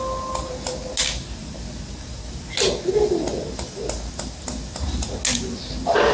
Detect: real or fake real